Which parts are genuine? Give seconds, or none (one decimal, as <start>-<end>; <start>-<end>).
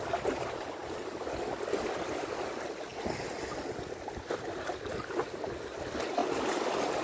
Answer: 0.0-7.0